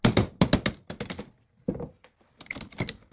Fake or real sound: real